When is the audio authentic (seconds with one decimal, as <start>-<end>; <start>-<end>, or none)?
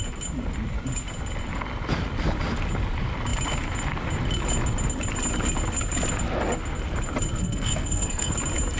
0.0-7.4; 8.3-8.8